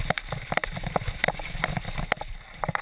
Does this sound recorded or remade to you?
recorded